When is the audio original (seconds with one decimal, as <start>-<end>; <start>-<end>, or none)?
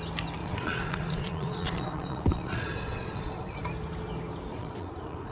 0.0-0.4; 3.6-4.5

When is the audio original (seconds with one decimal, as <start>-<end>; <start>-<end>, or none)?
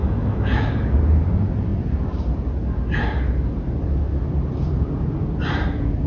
0.7-6.1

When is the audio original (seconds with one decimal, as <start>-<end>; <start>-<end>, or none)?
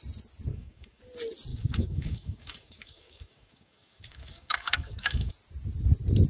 0.0-0.5; 1.0-1.5; 5.3-6.3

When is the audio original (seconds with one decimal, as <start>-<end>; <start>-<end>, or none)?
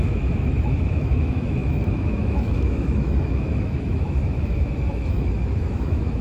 none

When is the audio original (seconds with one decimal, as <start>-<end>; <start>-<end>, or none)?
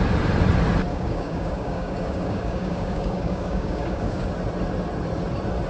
0.0-0.9; 4.3-5.7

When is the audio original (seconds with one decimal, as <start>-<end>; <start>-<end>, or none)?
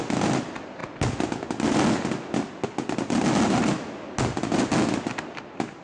0.0-5.8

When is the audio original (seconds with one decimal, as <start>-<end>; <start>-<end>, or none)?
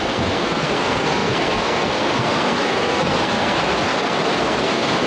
none